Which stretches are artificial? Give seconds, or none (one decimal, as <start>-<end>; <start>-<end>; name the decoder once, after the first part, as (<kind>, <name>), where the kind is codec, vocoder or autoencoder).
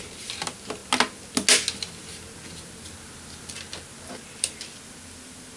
none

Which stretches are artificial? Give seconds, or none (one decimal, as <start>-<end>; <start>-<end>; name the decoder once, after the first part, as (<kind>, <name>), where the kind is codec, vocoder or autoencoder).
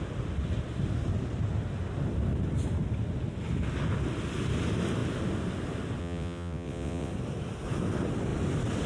6.0-7.1 (vocoder, WaveNeXt)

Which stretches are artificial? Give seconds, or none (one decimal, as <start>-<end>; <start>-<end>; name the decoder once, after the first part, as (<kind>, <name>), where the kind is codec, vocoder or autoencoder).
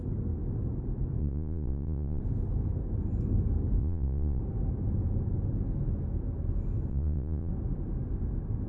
1.2-2.2 (vocoder, Vocos); 3.8-4.4; 6.9-7.5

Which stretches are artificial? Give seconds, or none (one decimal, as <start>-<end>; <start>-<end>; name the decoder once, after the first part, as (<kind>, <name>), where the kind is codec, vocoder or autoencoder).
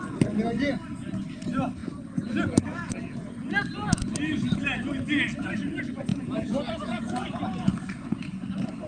6.1-7.7 (vocoder, Vocos)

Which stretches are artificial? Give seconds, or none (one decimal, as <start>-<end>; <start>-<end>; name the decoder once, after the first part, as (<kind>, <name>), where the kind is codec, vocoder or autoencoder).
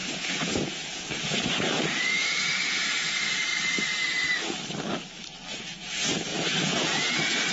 0.0-3.5 (vocoder, Vocos); 5.5-7.5